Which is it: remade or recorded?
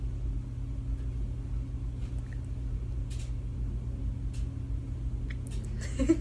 recorded